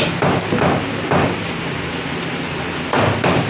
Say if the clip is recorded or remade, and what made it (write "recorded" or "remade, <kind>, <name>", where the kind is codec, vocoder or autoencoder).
recorded